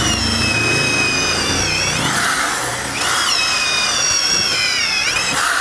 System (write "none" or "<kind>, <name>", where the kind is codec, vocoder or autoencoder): none